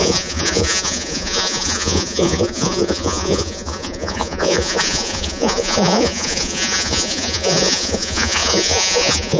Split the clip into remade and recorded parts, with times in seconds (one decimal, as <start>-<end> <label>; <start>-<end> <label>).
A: 0.0-9.4 remade

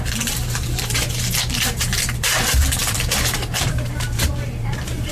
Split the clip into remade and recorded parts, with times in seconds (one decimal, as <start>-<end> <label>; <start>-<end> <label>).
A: 0.0-5.1 remade

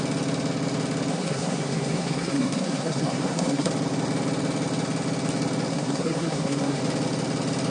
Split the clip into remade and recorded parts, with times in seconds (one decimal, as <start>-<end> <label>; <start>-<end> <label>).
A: 0.0-1.1 recorded; 1.1-3.7 remade; 3.7-5.7 recorded; 5.7-6.8 remade; 6.8-7.7 recorded